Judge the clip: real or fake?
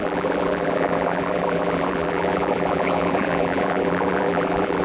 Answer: fake